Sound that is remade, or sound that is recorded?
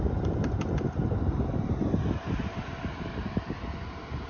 remade